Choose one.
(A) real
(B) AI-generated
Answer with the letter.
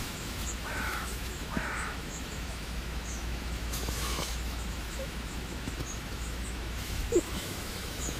B